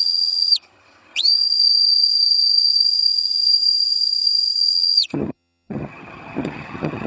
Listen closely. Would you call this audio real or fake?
fake